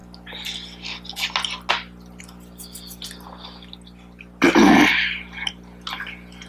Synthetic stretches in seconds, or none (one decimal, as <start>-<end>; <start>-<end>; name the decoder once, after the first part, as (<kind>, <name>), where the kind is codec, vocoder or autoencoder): 4.6-5.5 (vocoder, BigVGAN v2)